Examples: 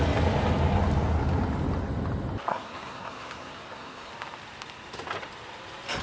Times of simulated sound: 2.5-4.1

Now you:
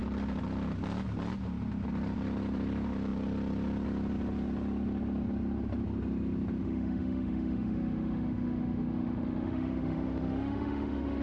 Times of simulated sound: 6.6-11.2

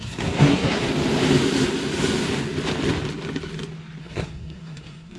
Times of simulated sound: 0.0-0.9; 4.0-5.2

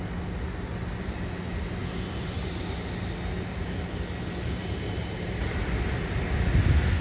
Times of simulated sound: 1.8-6.0

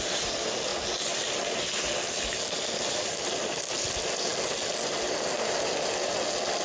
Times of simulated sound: none

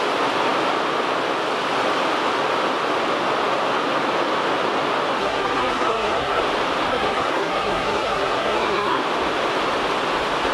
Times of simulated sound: 5.2-6.4; 6.9-9.0